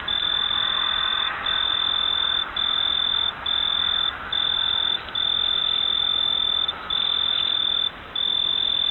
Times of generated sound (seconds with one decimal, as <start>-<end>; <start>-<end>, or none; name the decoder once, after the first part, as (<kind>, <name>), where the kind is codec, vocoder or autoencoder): none